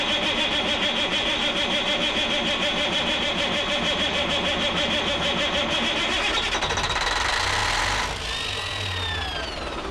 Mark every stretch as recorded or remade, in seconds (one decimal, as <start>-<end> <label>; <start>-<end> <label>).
0.0-2.7 recorded; 2.7-4.3 remade; 4.3-9.9 recorded